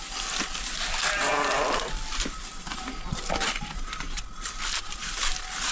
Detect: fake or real real